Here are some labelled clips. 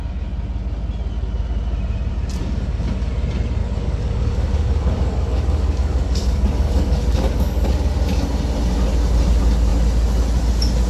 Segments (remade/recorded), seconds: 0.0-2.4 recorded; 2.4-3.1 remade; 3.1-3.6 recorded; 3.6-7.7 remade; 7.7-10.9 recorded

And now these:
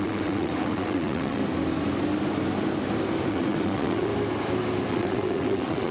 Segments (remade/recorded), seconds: 0.0-1.4 remade; 1.4-3.3 recorded; 3.3-4.1 remade; 4.1-4.9 recorded; 4.9-5.9 remade

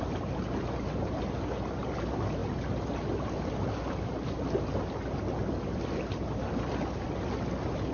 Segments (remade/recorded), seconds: 0.0-7.9 recorded

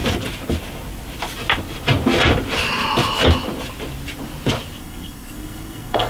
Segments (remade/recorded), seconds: 0.0-4.8 recorded; 4.8-6.1 remade

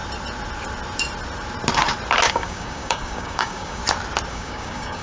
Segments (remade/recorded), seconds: 0.0-2.3 recorded; 2.3-3.8 remade; 3.8-4.3 recorded; 4.3-5.0 remade

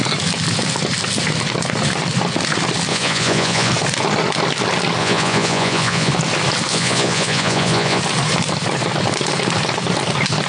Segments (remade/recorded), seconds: 0.0-2.9 recorded; 2.9-3.7 remade; 3.7-5.0 recorded; 5.0-6.1 remade; 6.1-6.7 recorded; 6.7-8.0 remade; 8.0-10.5 recorded

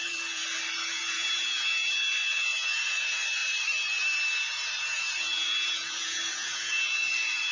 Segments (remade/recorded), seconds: 0.0-0.4 remade; 0.4-0.9 recorded; 0.9-3.4 remade; 3.4-4.8 recorded; 4.8-7.5 remade

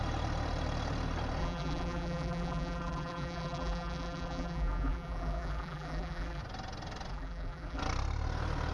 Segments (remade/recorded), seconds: 0.0-1.4 recorded; 1.4-6.4 remade; 6.4-7.1 recorded; 7.1-7.8 remade; 7.8-8.7 recorded